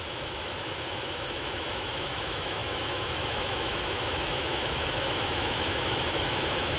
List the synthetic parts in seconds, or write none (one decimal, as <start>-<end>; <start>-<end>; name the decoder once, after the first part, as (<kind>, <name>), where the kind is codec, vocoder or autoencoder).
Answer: 0.0-6.8 (autoencoder, DAC-VAE)

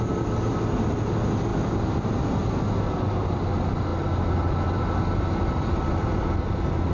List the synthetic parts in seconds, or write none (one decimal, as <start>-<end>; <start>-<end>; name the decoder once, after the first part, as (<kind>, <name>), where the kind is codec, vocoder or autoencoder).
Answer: none

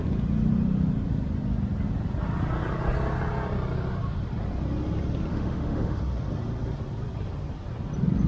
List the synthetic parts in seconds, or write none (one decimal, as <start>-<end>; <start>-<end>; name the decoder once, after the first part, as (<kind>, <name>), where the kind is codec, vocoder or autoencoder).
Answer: 5.3-6.0 (autoencoder, DAC-VAE)

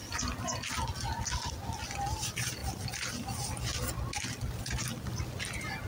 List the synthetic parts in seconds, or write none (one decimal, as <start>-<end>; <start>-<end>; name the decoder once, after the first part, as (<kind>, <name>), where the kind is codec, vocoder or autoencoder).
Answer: none

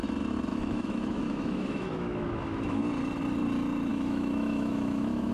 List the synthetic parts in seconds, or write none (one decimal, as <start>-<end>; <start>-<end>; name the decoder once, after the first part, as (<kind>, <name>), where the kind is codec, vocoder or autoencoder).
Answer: 0.5-2.8 (autoencoder, DAC-VAE); 3.9-5.3

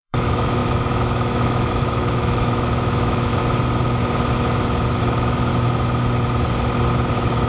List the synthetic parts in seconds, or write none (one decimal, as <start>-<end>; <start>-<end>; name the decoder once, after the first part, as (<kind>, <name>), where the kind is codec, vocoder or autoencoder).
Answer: 0.0-3.4 (autoencoder, DAC-VAE); 5.0-5.5; 7.1-7.5

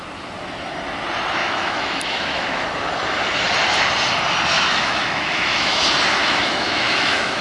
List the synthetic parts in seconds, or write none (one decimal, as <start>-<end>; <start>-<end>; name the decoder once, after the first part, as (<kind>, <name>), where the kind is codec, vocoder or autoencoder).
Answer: 1.4-2.6 (autoencoder, DAC-VAE); 4.5-5.8; 6.2-7.4